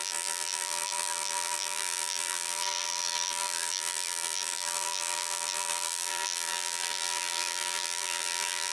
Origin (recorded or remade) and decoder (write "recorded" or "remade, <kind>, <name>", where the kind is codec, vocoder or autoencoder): remade, vocoder, BigVGAN v2